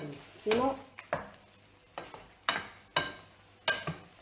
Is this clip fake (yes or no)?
no